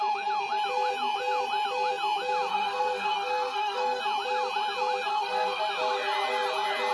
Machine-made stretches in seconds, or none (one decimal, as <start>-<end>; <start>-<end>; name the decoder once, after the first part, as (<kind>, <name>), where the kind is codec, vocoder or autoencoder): 2.5-4.0 (codec, SNAC); 5.1-5.6